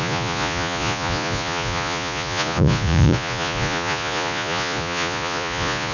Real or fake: fake